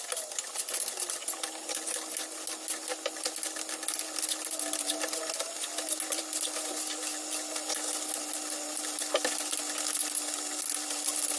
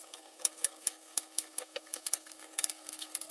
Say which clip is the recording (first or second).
first